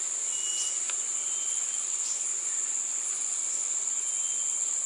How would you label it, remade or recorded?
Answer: recorded